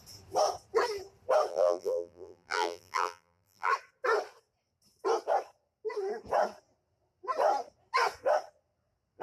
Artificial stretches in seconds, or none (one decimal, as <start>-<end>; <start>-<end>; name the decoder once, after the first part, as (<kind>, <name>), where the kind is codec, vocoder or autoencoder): 1.5-3.7 (vocoder, BigVGAN v2)